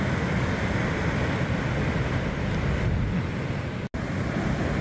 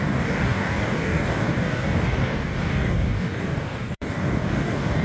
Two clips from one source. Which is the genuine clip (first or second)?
first